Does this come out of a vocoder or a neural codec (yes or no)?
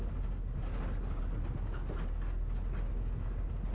no